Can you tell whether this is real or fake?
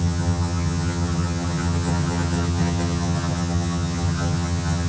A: fake